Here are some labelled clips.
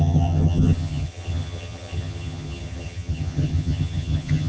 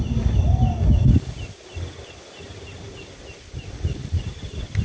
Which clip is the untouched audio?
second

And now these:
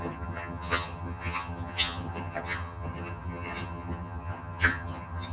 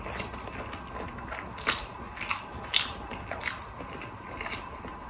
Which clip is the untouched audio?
second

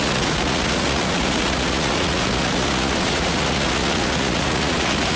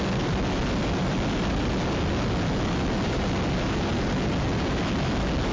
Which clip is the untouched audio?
second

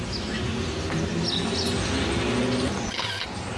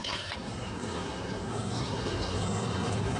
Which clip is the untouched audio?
first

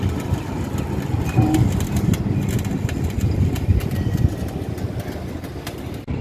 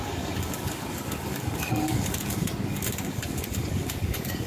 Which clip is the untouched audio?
first